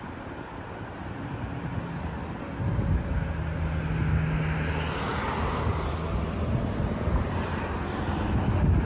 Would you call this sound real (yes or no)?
yes